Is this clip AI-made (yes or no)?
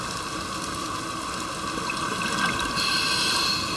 no